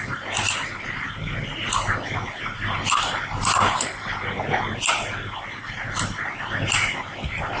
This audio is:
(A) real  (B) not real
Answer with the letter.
A